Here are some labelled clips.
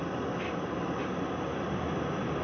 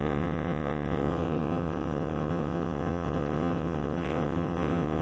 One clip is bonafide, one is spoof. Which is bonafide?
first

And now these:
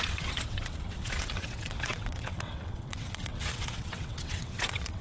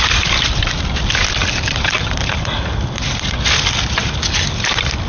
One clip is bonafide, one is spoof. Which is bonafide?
second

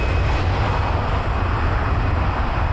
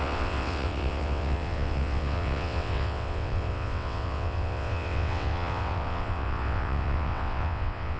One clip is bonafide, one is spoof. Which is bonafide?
first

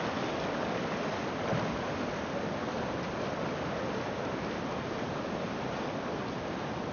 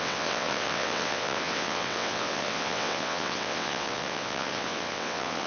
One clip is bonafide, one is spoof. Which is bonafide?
first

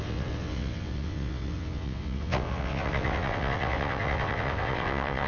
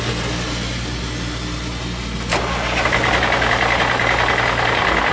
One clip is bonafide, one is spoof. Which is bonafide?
second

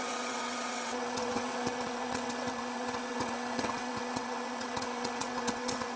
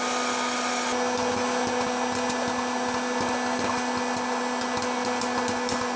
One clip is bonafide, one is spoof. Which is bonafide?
second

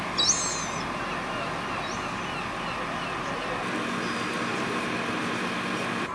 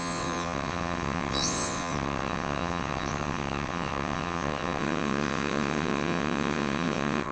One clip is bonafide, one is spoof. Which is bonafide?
first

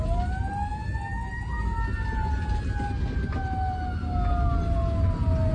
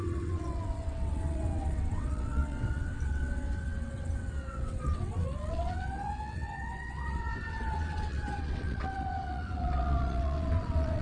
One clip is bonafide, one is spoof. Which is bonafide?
first